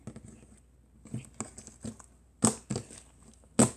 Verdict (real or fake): real